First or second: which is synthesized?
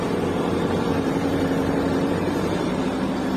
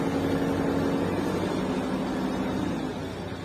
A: first